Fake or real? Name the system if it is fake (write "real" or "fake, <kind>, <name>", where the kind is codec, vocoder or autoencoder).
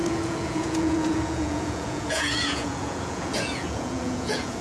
fake, vocoder, Vocos